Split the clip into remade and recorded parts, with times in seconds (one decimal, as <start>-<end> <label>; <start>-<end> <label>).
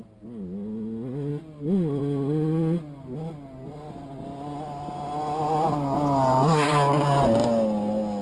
0.0-8.2 recorded